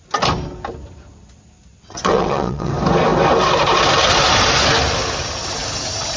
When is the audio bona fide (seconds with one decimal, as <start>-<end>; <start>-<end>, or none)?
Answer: 0.0-1.7; 2.7-6.2